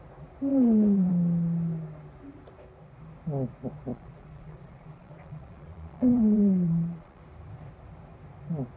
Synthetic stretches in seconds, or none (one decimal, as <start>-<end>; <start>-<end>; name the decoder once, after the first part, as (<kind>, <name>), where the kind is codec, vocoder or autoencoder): 0.5-1.1 (vocoder, Vocos); 3.9-7.2